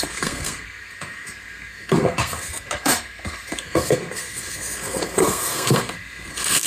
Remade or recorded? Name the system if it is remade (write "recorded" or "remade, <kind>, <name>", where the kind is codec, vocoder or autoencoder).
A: remade, codec, SNAC